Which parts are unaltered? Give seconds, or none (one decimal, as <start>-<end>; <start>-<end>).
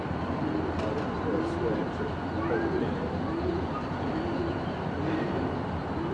0.0-6.1